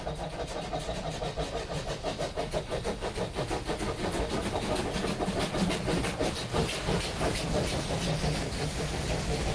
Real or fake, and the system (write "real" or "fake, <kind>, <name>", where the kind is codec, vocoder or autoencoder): real